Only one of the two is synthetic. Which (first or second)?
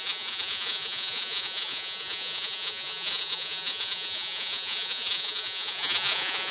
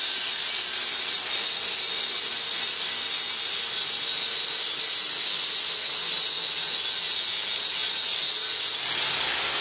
first